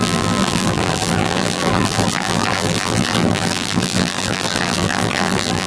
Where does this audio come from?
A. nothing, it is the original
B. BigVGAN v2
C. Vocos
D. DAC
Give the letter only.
B